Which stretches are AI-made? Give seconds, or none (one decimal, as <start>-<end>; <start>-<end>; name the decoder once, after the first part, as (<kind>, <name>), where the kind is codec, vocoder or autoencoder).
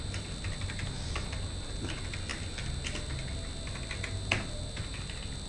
none